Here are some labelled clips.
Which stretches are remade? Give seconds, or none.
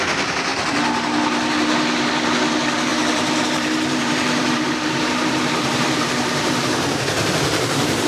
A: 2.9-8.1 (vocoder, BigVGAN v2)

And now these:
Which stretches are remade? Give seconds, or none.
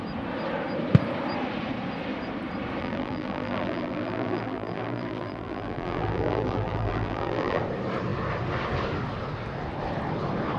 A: 2.8-7.6 (vocoder, BigVGAN v2)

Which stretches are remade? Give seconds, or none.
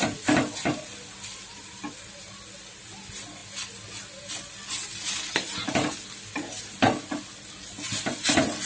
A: none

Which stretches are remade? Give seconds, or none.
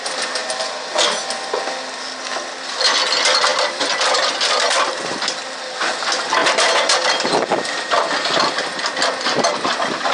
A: 0.4-0.9 (vocoder, BigVGAN v2); 3.5-5.0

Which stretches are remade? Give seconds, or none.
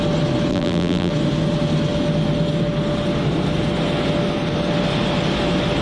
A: 0.5-1.1 (vocoder, BigVGAN v2)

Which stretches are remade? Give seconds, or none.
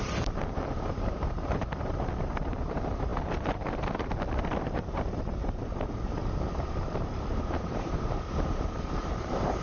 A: 0.0-6.2 (vocoder, BigVGAN v2); 7.4-9.6